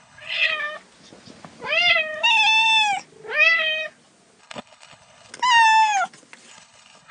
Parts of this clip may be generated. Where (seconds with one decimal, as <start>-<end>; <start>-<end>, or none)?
0.0-0.5; 4.4-5.3; 6.5-7.1